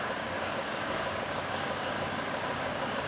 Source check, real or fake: fake